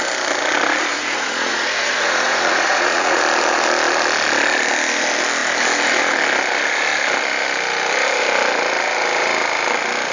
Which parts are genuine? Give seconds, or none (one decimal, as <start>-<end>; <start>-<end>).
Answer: 0.0-0.9; 3.2-10.1